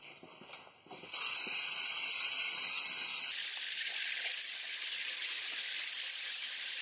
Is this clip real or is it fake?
real